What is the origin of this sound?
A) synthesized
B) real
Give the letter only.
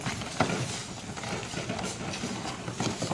B